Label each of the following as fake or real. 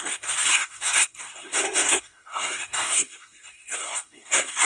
fake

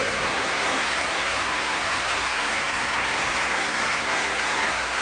fake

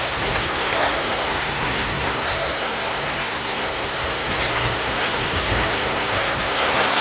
fake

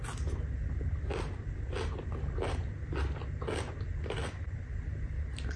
real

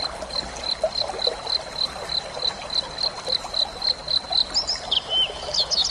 real